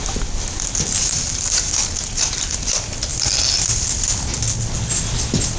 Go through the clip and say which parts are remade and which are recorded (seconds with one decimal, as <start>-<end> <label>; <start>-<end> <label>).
0.0-5.6 recorded